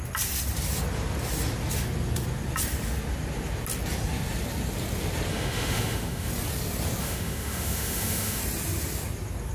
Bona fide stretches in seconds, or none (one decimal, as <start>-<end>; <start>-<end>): 0.0-5.3; 6.3-7.0; 8.4-9.5